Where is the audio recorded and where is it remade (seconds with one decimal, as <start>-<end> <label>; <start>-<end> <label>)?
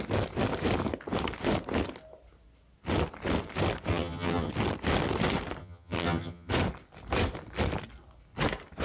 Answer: 0.0-3.9 recorded; 3.9-4.5 remade; 4.5-5.6 recorded; 5.6-6.5 remade; 6.5-8.8 recorded